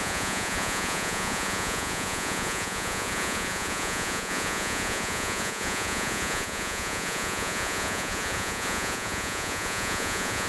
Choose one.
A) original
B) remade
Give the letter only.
B